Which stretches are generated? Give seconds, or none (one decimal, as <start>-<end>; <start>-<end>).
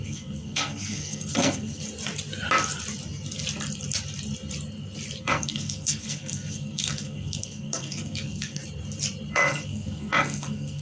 0.0-1.8; 5.2-8.6; 9.3-10.8